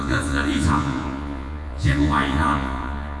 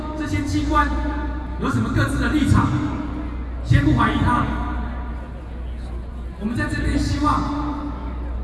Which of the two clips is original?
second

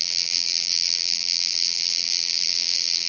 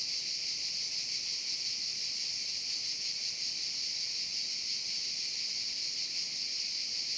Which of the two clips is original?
second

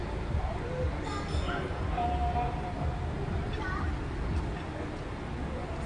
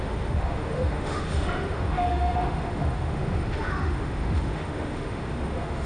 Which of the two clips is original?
first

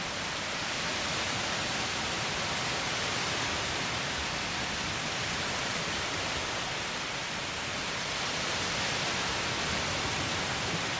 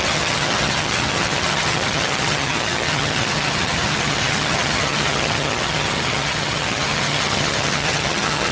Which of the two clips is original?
first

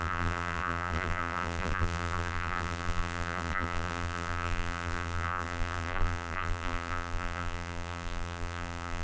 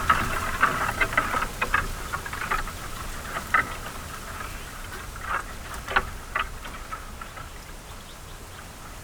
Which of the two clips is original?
second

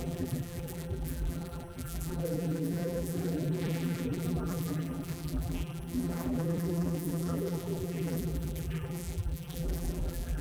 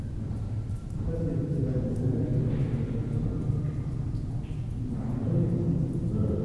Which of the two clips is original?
second